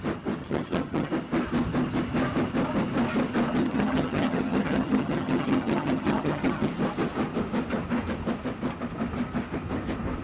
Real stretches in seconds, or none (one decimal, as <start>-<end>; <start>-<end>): 0.0-0.4; 1.1-3.6; 6.7-10.2